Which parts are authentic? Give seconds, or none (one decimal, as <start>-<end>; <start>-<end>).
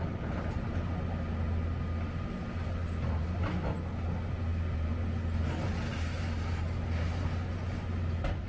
0.0-8.5